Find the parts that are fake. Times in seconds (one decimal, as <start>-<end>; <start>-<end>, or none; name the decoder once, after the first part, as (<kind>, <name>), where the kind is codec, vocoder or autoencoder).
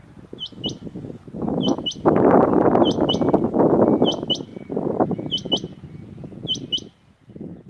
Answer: 4.5-5.5 (vocoder, BigVGAN v2)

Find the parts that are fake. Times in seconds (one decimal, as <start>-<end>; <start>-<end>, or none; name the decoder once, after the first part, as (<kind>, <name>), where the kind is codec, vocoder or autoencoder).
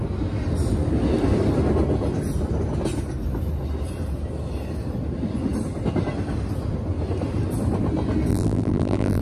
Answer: 8.3-9.2 (vocoder, BigVGAN v2)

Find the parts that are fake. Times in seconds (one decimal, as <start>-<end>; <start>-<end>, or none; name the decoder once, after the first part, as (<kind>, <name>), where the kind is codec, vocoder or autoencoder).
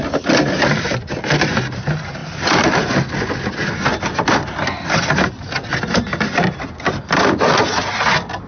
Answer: 2.2-2.9 (vocoder, BigVGAN v2)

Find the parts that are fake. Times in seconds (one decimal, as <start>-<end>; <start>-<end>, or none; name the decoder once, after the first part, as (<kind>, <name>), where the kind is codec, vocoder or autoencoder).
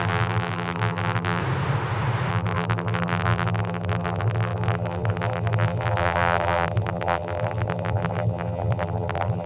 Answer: 0.0-1.4 (vocoder, BigVGAN v2); 2.3-9.5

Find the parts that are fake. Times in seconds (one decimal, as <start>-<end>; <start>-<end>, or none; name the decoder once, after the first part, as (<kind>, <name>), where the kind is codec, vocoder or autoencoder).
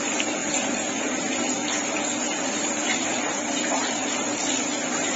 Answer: 0.0-1.6 (vocoder, BigVGAN v2); 2.5-5.2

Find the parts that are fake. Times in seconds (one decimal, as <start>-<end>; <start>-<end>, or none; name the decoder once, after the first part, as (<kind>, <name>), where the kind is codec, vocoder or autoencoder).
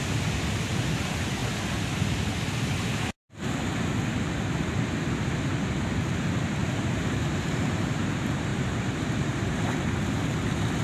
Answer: 6.6-8.1 (vocoder, BigVGAN v2)